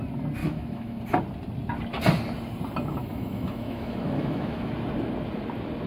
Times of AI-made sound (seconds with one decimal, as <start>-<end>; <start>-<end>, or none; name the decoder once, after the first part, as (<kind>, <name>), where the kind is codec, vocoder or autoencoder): 0.4-1.0 (autoencoder, DAC-VAE); 3.0-4.7